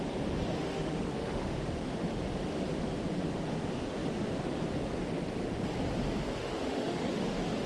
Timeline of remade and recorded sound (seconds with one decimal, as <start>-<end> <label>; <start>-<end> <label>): 0.0-0.6 recorded; 0.6-1.6 remade; 1.6-6.4 recorded; 6.4-7.1 remade; 7.1-7.7 recorded